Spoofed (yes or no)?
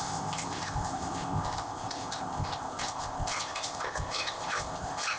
yes